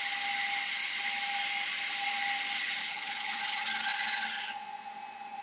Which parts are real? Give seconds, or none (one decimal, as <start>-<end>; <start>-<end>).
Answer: 0.0-2.8; 3.4-5.4